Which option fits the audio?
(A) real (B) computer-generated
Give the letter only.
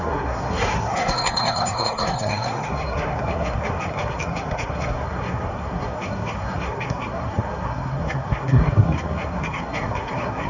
B